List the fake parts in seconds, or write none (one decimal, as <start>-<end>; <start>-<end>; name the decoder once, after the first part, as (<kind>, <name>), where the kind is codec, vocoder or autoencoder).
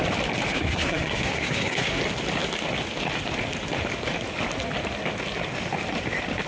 0.5-2.0 (codec, SNAC)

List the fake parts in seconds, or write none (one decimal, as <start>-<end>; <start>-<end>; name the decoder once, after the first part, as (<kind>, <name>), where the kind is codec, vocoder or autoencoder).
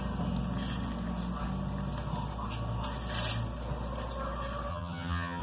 4.7-5.4 (vocoder, HiFi-GAN)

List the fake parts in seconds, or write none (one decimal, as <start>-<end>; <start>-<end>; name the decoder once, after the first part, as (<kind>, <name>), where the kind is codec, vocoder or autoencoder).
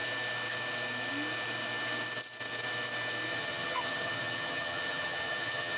3.3-5.8 (vocoder, HiFi-GAN)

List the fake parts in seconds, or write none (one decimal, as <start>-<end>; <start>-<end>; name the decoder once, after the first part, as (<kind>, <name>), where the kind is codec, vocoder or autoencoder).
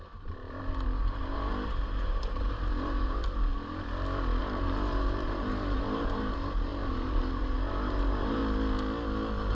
0.0-3.5 (vocoder, BigVGAN v2); 4.4-8.4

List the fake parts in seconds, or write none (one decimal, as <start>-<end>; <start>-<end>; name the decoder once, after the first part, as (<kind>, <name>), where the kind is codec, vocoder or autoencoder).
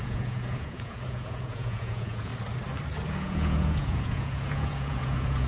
0.0-2.3 (vocoder, Vocos); 3.1-5.5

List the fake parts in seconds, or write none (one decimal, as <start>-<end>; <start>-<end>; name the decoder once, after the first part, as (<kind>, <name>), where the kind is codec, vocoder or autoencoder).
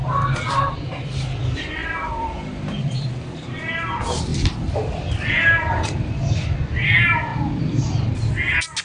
0.0-1.4 (vocoder, BigVGAN v2); 1.8-3.5; 4.3-5.3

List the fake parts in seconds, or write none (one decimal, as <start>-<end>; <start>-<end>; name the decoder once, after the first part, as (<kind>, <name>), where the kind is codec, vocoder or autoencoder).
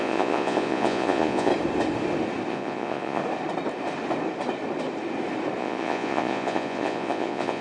0.0-1.5 (vocoder, Vocos); 2.5-3.2; 5.6-7.6